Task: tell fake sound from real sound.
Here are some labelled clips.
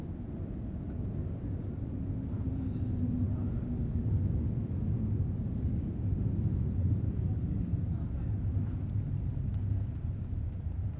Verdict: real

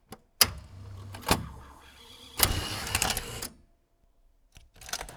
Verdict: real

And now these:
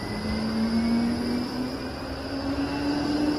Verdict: real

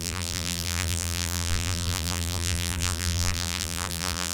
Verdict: fake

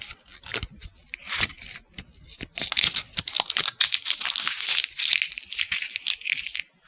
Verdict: real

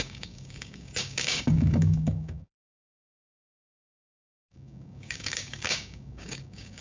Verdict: fake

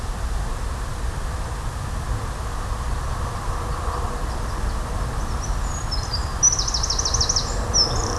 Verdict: real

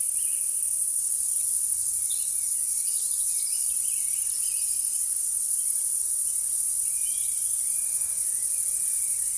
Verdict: real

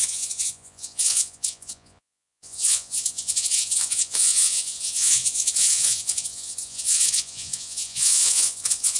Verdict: fake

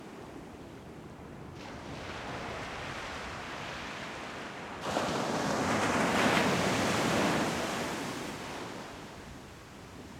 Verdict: real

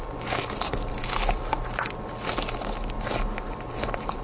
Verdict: real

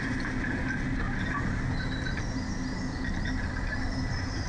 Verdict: real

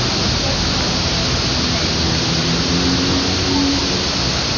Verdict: real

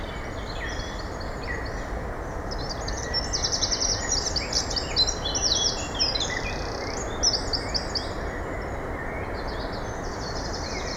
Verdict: real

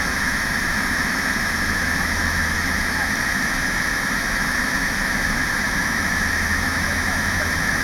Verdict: fake